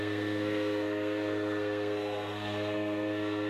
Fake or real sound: fake